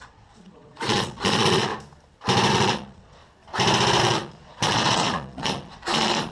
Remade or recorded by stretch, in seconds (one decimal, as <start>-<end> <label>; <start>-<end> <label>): 0.0-1.7 remade; 1.7-2.5 recorded; 2.5-3.2 remade; 3.2-4.0 recorded; 4.0-6.3 remade